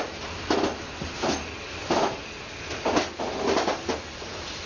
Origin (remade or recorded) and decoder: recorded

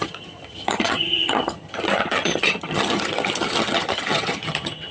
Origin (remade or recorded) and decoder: remade, vocoder, HiFi-GAN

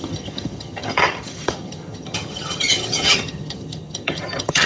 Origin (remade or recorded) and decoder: remade, vocoder, HiFi-GAN